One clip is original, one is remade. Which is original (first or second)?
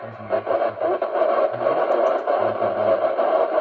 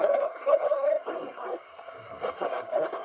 first